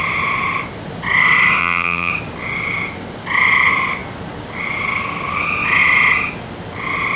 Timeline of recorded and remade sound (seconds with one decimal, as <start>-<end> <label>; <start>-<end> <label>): 0.0-1.6 recorded; 1.6-2.1 remade; 2.1-7.2 recorded